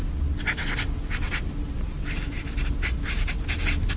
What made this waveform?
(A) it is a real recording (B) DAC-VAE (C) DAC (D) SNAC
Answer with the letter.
A